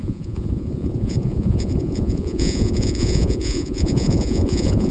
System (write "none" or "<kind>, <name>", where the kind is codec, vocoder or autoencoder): vocoder, Vocos